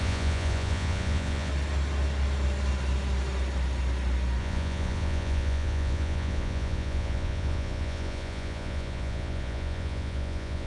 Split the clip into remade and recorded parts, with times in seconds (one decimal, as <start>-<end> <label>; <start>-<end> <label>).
0.0-1.5 remade; 1.5-4.4 recorded; 4.4-10.7 remade

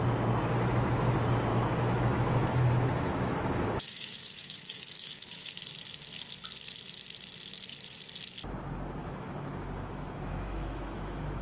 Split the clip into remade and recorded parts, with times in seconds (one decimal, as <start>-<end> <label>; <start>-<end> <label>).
0.0-1.5 recorded; 1.5-5.5 remade; 5.5-9.0 recorded; 9.0-11.4 remade